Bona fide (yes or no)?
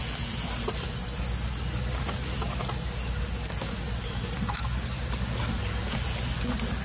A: yes